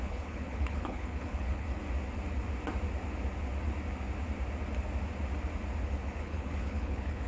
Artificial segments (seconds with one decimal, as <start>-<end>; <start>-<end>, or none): 0.0-1.8; 5.9-7.3